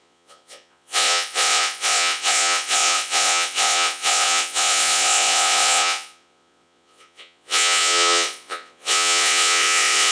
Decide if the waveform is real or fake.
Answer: fake